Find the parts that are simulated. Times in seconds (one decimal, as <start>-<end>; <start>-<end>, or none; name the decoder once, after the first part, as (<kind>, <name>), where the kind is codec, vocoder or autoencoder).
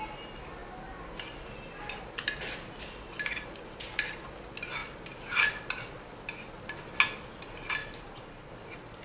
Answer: 7.8-8.5 (vocoder, BigVGAN v2)